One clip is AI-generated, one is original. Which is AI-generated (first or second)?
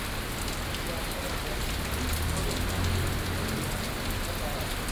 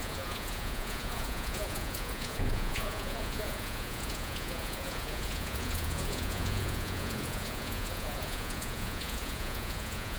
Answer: second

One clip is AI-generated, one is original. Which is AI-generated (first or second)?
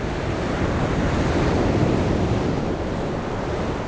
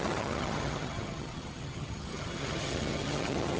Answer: second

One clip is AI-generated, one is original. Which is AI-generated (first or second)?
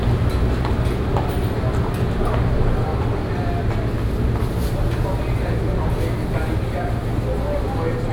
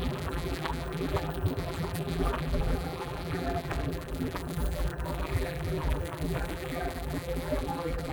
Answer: second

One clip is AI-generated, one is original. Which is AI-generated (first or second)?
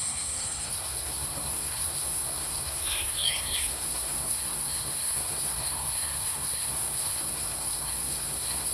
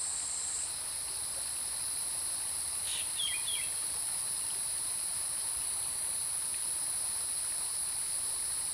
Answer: first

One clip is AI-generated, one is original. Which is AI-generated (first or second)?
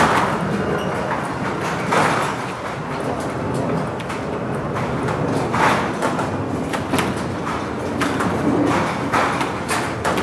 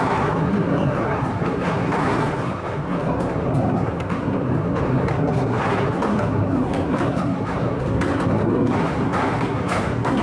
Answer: second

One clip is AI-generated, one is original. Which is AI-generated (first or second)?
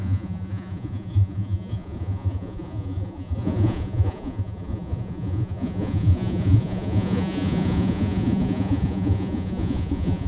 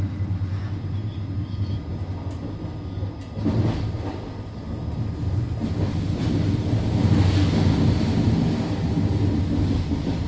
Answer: first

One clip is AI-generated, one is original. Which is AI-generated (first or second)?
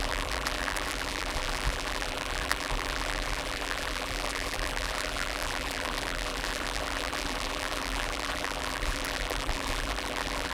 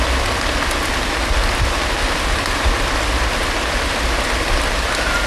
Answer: first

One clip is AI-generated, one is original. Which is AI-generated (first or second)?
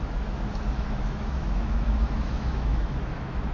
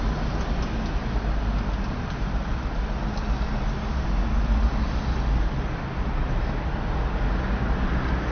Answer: first